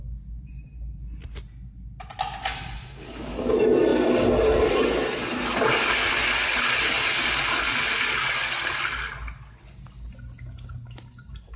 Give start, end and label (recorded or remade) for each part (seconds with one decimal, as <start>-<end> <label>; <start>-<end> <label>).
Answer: 0.0-11.6 recorded